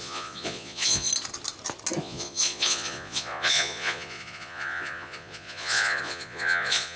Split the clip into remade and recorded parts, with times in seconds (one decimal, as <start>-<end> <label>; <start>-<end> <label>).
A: 0.0-1.1 remade; 1.1-2.0 recorded; 2.0-7.0 remade